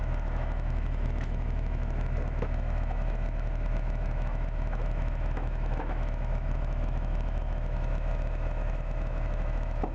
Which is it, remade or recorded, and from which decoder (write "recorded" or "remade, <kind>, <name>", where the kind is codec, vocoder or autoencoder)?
remade, autoencoder, DAC-VAE